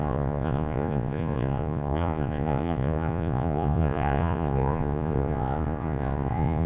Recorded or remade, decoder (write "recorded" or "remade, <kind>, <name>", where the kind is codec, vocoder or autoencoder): remade, vocoder, Vocos